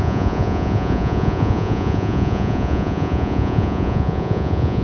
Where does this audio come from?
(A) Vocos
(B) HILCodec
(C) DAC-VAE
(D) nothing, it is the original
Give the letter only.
A